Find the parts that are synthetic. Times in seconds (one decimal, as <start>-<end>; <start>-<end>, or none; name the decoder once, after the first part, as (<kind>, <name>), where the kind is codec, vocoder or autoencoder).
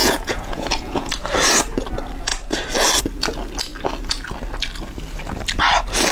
0.0-1.1 (vocoder, Vocos)